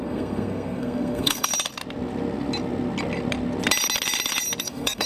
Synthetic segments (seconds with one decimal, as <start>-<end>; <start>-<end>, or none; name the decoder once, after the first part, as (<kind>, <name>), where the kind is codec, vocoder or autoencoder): 0.0-1.5 (codec, SNAC); 4.6-5.1